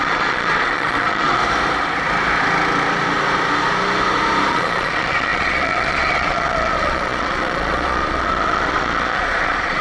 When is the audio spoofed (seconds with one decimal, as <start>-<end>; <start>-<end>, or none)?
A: 0.0-1.4; 4.5-9.8